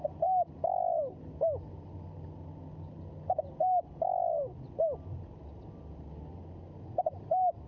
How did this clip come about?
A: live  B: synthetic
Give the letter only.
A